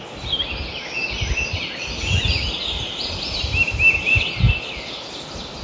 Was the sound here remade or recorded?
recorded